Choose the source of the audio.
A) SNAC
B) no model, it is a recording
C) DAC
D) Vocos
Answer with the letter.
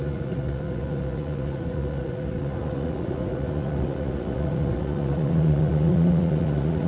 D